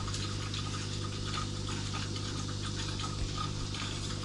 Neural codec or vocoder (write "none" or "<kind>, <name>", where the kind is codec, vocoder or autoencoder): none